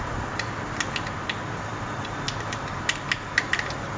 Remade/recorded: recorded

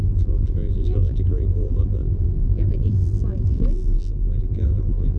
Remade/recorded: remade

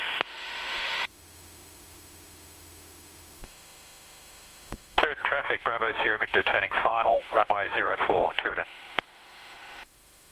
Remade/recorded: remade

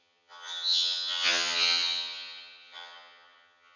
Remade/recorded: remade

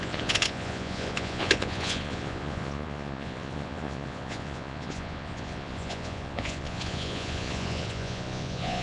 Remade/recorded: remade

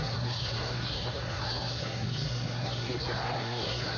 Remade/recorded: remade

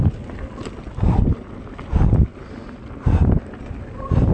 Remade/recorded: recorded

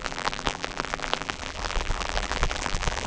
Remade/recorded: remade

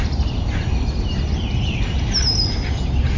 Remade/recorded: recorded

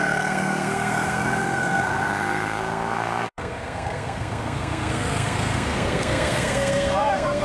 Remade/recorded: remade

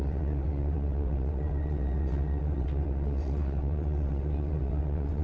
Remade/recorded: remade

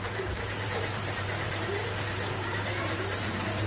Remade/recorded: remade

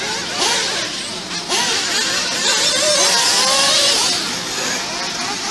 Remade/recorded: recorded